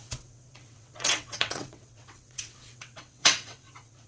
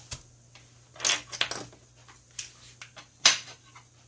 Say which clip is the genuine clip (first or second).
second